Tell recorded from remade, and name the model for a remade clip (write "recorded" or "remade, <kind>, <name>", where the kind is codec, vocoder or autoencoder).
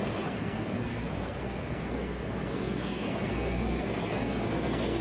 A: remade, codec, SNAC